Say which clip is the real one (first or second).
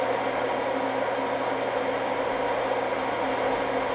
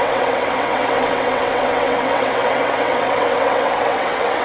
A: first